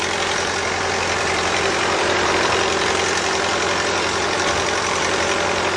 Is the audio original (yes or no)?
no